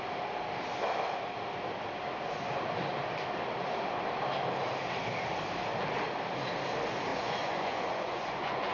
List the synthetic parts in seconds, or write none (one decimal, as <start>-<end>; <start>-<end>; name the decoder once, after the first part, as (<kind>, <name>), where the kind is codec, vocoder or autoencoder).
7.1-8.7 (vocoder, Vocos)